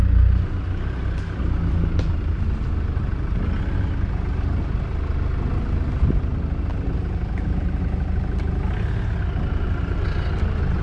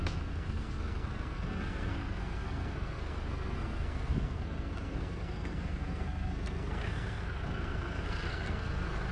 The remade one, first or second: second